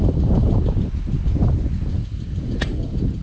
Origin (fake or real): real